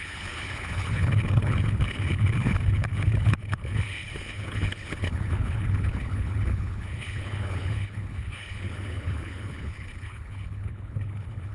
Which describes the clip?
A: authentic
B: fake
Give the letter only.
B